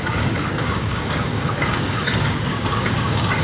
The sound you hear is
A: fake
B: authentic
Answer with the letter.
A